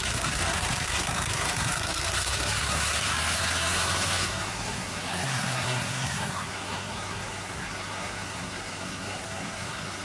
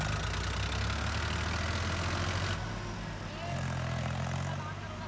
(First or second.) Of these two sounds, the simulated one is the first